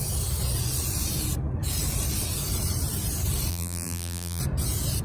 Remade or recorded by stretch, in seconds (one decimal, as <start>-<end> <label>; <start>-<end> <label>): 0.0-3.5 recorded; 3.5-4.4 remade; 4.4-5.0 recorded